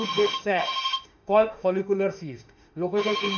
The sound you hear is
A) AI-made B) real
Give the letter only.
A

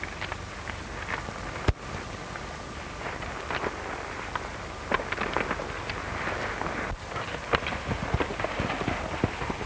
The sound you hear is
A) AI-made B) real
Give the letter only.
B